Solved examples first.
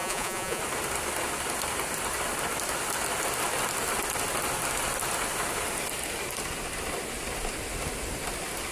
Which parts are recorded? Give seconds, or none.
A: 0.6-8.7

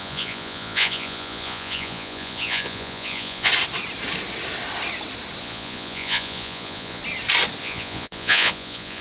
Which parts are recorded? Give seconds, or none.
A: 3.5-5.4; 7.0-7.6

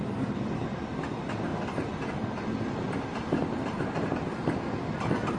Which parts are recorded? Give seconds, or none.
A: 0.0-5.4

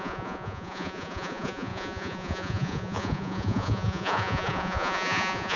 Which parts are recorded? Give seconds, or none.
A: none

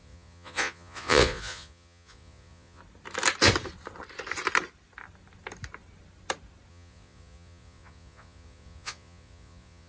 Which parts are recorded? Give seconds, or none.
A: 2.8-6.7

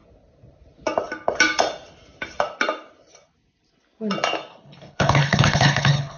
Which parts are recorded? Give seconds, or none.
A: 0.0-4.5

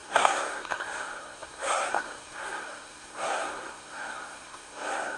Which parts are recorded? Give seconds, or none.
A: none

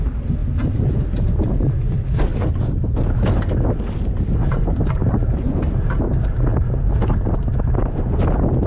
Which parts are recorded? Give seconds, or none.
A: 0.0-5.0; 6.9-8.7